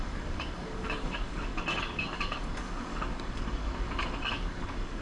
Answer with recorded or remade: remade